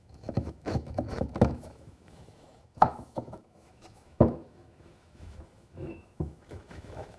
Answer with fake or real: fake